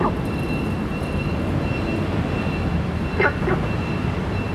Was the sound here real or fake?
real